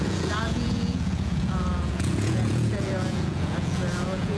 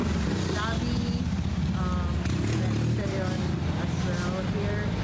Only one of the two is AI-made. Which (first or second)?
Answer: first